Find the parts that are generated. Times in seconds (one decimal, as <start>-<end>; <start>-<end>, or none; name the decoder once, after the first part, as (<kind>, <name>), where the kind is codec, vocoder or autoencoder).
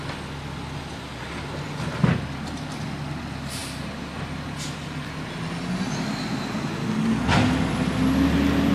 none